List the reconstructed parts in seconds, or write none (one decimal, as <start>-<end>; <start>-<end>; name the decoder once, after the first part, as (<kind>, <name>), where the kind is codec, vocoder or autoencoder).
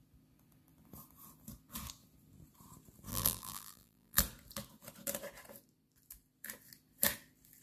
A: 3.1-4.2 (vocoder, BigVGAN v2)